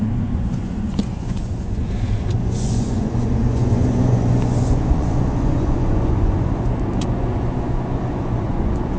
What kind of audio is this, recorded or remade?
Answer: remade